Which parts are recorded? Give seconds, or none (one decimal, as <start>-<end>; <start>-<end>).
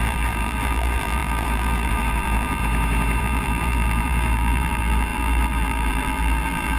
2.6-3.2